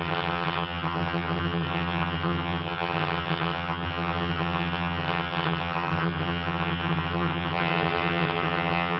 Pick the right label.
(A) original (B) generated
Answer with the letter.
B